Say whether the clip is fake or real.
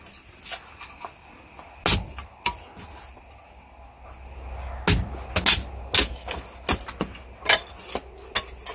real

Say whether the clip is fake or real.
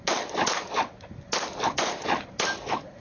real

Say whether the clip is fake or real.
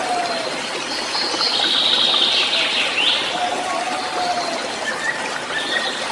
real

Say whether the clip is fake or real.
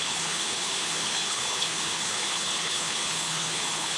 fake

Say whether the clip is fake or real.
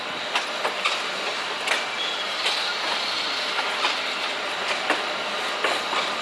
real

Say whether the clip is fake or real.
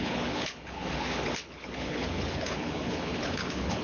fake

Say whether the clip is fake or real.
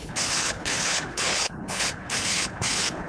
fake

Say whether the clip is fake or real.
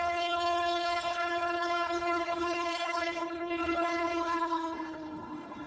fake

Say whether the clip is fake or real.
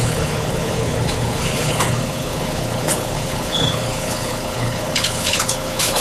fake